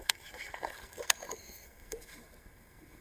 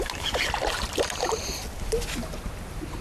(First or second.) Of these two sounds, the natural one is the second